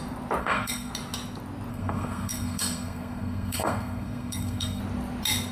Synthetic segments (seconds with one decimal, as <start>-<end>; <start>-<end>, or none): 0.4-0.9; 1.7-4.8